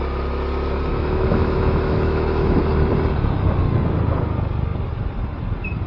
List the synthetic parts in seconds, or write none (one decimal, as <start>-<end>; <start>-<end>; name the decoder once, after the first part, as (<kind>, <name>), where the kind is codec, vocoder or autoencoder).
0.9-2.6 (autoencoder, DAC-VAE)